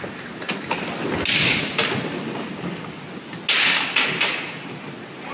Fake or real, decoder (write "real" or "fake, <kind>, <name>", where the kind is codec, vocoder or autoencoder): real